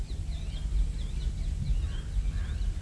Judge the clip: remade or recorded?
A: recorded